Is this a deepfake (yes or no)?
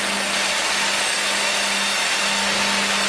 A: no